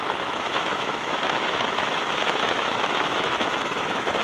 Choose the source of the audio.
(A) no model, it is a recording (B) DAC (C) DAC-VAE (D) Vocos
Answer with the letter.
C